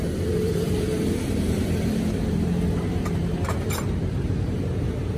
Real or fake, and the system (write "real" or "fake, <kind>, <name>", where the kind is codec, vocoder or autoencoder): fake, vocoder, BigVGAN v2